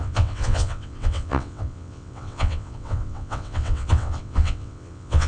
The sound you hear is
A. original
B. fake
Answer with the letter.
B